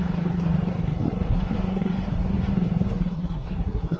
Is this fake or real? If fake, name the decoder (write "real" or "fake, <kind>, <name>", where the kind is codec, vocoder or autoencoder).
fake, codec, SNAC